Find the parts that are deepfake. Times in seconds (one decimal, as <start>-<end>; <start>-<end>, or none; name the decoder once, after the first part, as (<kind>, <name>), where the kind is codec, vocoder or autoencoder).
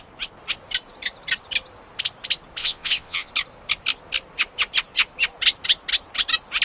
2.6-3.3 (vocoder, Vocos)